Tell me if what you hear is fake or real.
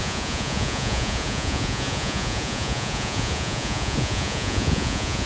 fake